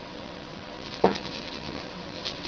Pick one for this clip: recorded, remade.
remade